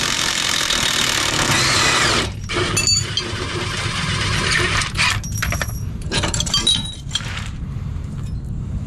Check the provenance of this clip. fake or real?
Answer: fake